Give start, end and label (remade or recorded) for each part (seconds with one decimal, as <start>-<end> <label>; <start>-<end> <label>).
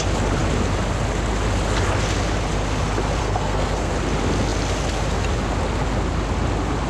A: 0.0-3.2 recorded; 3.2-3.9 remade; 3.9-6.9 recorded